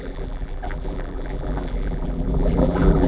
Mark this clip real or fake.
fake